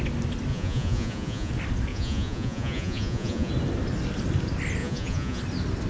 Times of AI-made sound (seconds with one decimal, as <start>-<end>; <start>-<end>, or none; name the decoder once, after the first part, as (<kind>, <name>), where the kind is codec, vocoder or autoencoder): 0.5-1.5 (vocoder, Vocos); 1.9-3.5; 4.8-5.4